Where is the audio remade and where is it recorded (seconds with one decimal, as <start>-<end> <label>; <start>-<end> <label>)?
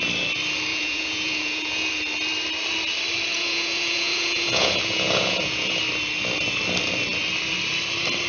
0.0-0.7 recorded; 0.7-1.9 remade; 1.9-3.3 recorded; 3.3-5.8 remade; 5.8-8.3 recorded